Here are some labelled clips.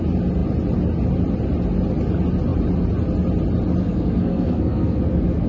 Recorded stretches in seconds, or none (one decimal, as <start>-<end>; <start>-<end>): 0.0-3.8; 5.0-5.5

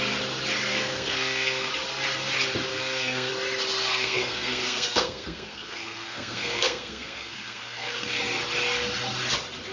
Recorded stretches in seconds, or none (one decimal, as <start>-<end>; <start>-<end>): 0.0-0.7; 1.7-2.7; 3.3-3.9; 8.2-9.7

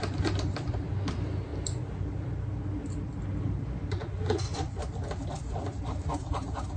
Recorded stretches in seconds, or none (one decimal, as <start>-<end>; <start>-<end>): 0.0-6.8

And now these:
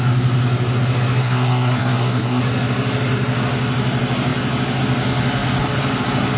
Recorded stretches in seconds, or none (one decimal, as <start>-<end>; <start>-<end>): 0.0-1.2; 2.4-6.4

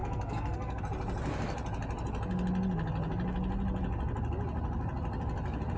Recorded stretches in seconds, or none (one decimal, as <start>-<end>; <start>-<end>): 0.8-5.8

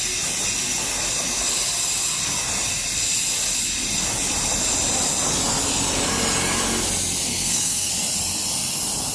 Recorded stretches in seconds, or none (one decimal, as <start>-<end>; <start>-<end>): 0.0-7.3; 7.9-9.1